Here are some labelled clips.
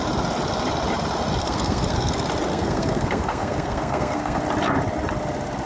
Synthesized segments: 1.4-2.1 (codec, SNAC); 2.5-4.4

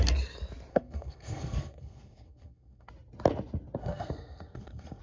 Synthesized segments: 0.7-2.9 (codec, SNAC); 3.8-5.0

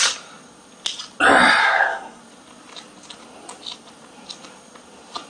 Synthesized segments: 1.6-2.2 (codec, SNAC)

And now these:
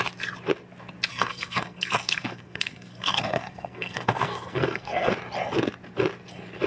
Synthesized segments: 1.1-5.1 (codec, SNAC)

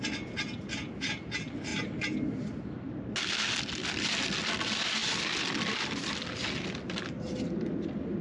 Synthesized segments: none